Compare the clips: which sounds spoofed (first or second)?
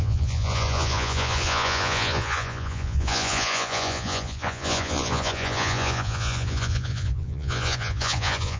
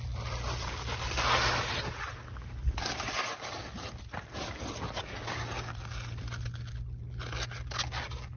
first